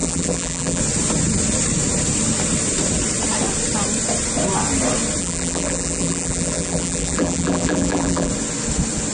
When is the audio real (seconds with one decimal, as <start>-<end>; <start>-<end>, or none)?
0.8-5.2; 8.3-9.1